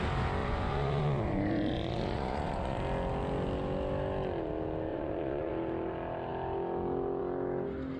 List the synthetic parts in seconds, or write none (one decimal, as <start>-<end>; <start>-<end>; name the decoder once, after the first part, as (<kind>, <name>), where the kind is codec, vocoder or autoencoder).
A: 0.4-2.8 (vocoder, Vocos); 4.9-5.5